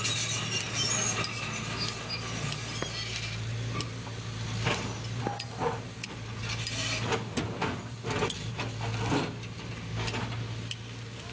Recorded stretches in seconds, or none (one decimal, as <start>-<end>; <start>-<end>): 0.0-11.3